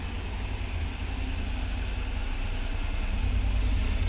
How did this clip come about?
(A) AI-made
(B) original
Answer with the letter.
B